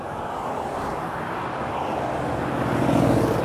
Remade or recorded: remade